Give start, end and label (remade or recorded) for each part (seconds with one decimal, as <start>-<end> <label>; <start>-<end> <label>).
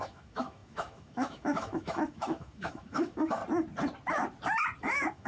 0.0-3.4 remade; 3.4-4.8 recorded; 4.8-5.3 remade